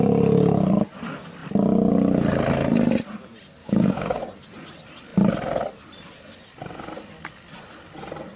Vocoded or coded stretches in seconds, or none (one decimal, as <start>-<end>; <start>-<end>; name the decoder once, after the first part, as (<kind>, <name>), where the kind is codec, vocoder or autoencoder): 3.6-4.2 (codec, DAC)